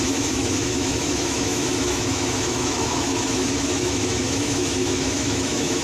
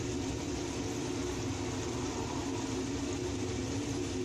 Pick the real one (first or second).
second